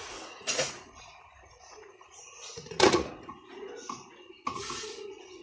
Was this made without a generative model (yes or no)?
no